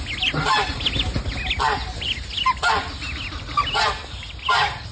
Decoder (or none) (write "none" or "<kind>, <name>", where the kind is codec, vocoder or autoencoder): none